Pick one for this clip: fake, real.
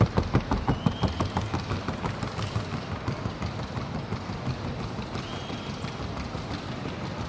real